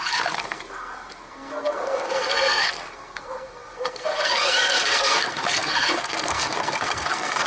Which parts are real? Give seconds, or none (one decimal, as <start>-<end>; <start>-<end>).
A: none